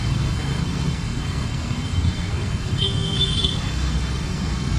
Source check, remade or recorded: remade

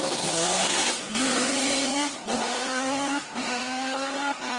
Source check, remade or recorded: remade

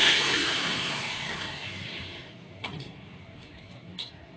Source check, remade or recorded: remade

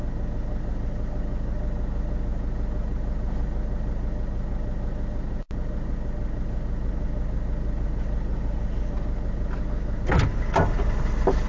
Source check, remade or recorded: recorded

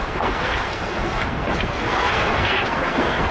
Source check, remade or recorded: remade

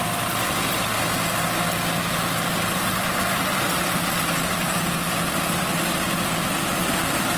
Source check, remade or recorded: recorded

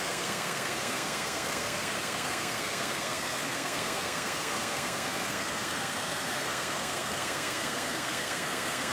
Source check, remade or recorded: remade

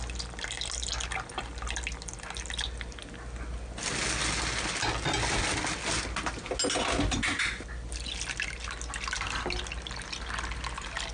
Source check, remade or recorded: recorded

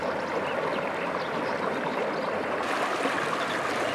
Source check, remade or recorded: recorded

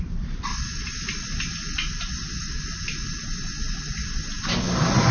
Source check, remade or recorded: recorded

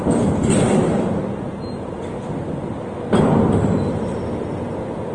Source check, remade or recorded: recorded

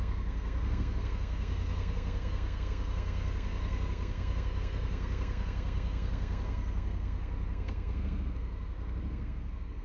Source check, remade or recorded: remade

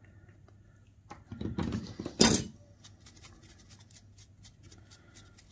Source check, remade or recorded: recorded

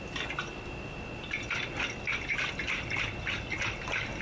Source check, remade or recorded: recorded